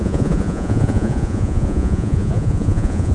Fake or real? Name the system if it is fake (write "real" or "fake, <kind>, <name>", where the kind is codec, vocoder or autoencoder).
fake, vocoder, Vocos